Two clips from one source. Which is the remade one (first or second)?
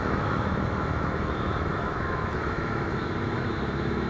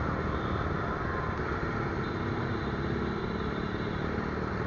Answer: first